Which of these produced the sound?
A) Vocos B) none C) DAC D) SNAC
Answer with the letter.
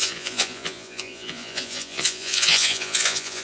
A